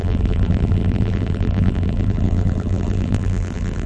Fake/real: fake